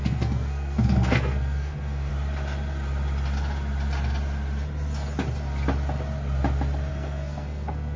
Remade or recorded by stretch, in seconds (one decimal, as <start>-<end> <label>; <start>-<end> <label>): 0.0-2.1 remade; 2.1-6.9 recorded; 6.9-8.0 remade